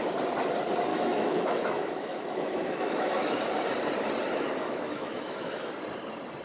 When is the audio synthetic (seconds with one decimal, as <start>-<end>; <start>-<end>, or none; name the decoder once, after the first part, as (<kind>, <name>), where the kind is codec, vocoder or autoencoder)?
0.9-3.4 (autoencoder, DAC-VAE); 4.6-5.7